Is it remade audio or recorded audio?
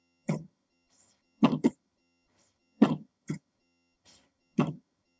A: remade